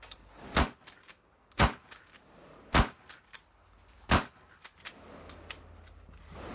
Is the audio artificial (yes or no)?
no